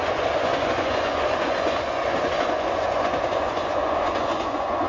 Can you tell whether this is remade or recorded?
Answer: remade